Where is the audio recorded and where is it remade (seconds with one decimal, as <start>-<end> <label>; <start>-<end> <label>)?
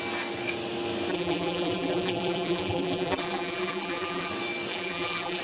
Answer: 0.0-1.1 recorded; 1.1-4.3 remade; 4.3-4.7 recorded; 4.7-5.4 remade